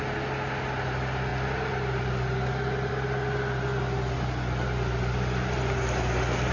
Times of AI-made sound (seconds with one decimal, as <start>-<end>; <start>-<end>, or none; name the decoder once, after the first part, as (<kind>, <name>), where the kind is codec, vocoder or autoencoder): none